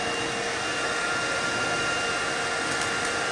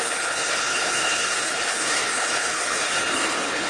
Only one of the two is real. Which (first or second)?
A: first